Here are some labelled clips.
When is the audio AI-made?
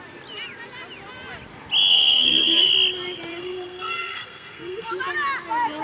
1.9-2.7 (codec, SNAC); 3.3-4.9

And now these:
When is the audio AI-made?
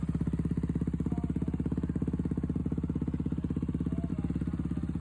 none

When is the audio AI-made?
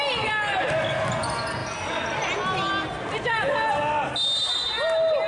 none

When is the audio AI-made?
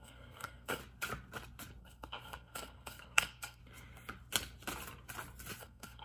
0.0-0.8 (codec, SNAC); 1.8-3.6; 5.6-6.0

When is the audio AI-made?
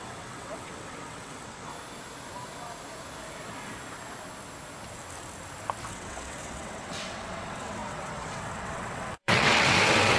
0.0-1.7 (vocoder, WaveNeXt); 5.9-10.2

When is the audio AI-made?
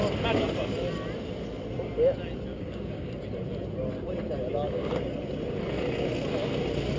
2.5-3.1 (codec, DAC)